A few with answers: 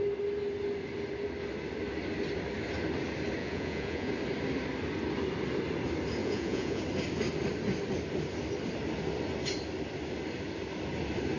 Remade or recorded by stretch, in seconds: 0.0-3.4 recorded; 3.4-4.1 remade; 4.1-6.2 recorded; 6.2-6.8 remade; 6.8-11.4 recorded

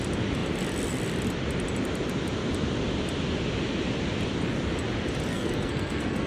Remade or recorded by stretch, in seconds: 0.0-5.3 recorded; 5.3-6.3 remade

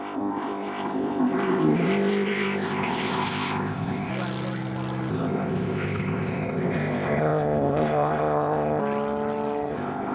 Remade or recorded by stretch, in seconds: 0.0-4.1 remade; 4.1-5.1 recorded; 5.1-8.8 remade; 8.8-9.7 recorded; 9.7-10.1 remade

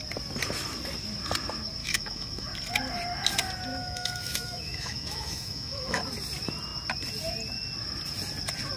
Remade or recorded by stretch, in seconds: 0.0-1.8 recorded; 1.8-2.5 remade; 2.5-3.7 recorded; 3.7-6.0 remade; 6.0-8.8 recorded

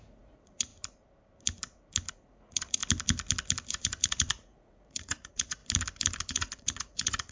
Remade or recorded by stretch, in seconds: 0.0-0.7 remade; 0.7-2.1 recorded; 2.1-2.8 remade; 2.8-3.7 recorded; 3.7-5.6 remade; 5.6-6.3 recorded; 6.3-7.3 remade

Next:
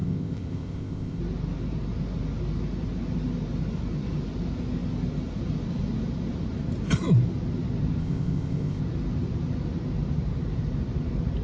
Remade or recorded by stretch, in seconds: 0.0-1.2 remade; 1.2-8.0 recorded; 8.0-8.8 remade; 8.8-11.4 recorded

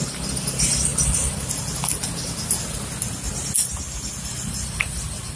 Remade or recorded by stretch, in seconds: 0.0-5.4 recorded

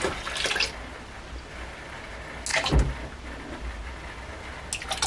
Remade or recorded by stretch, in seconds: 0.0-5.1 recorded